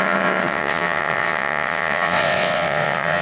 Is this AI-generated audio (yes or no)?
yes